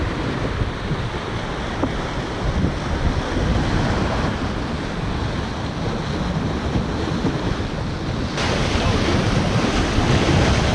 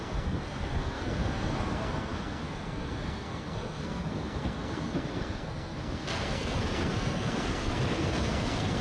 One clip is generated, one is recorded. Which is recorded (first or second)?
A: first